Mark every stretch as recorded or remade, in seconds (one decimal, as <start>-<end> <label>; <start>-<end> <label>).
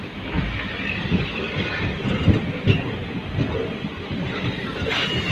0.0-5.3 recorded